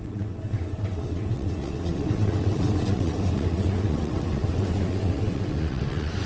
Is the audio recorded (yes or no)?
no